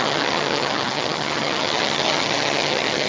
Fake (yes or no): yes